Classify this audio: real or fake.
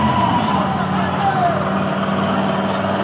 real